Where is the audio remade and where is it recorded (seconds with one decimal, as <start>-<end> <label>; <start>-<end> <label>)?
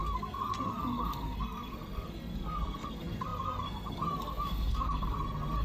0.0-5.6 remade